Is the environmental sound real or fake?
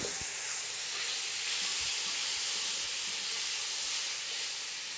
real